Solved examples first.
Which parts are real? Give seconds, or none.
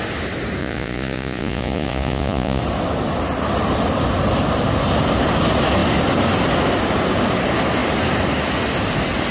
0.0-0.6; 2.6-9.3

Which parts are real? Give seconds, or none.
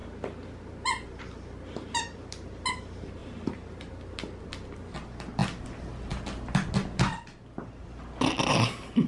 0.0-3.2; 3.9-9.1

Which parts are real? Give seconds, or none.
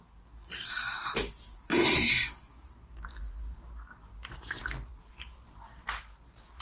none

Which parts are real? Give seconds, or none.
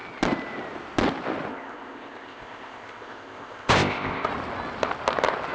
0.0-1.5; 4.3-5.5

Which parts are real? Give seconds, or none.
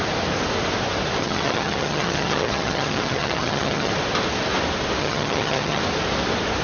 0.0-1.2; 3.9-5.0; 5.8-6.6